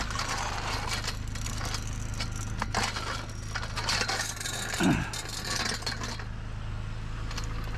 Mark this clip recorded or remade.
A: recorded